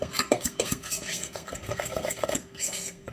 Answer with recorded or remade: remade